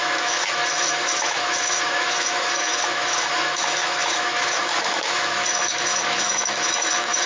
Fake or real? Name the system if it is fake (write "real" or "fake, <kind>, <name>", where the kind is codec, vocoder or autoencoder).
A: fake, autoencoder, DAC-VAE